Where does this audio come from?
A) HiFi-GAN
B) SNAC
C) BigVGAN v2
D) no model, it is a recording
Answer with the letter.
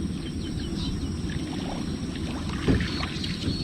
D